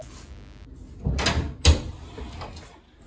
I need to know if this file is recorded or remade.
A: recorded